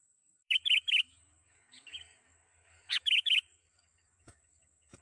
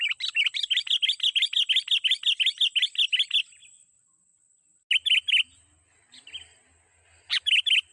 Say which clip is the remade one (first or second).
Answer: first